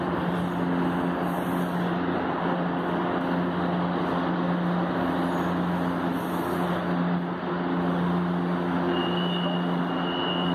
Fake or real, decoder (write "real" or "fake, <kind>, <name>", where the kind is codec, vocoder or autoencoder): real